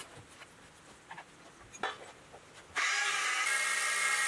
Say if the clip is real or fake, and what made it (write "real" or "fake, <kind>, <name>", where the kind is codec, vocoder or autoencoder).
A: real